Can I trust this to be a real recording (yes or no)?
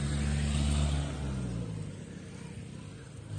yes